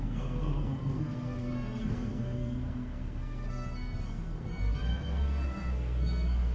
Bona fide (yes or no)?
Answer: no